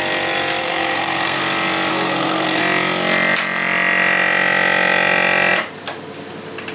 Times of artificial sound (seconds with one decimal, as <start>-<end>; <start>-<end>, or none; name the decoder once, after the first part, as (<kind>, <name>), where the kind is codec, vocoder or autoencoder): 0.6-1.4 (codec, SNAC); 1.9-2.6